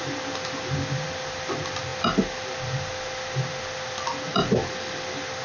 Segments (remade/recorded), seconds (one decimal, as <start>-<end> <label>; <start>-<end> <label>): 0.0-5.4 recorded